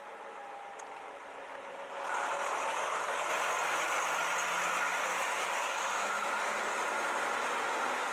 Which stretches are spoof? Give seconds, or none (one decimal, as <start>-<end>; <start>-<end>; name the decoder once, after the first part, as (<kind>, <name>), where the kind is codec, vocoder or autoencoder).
2.7-3.3 (codec, DAC); 5.1-6.8